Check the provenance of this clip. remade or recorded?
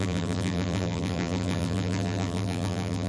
remade